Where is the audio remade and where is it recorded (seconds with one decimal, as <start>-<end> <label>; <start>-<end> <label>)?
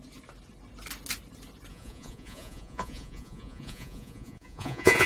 0.0-1.7 recorded; 1.7-5.1 remade